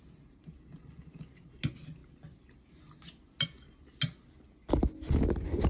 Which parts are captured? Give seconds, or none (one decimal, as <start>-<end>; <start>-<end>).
0.0-5.7